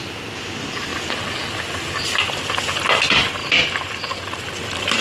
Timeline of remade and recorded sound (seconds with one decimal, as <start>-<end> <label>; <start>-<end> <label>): 0.0-3.4 recorded; 3.4-4.2 remade; 4.2-5.0 recorded